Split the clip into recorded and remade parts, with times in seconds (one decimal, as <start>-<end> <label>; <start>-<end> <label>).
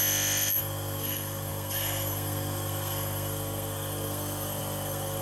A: 0.0-0.6 recorded; 0.6-5.2 remade